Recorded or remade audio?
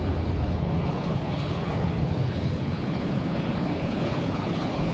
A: remade